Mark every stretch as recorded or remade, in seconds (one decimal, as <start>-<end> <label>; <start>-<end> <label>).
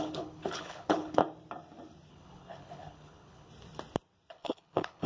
0.0-1.2 remade; 1.2-2.1 recorded; 2.1-3.5 remade; 3.5-4.3 recorded; 4.3-5.1 remade